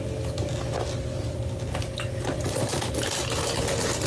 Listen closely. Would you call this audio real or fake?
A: real